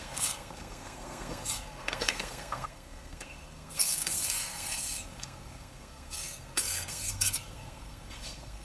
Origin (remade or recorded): remade